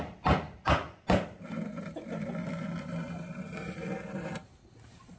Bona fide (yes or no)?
yes